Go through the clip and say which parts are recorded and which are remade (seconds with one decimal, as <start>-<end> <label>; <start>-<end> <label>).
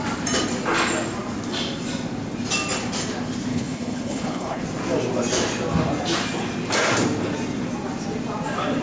0.0-3.5 recorded; 3.5-4.6 remade; 4.6-8.8 recorded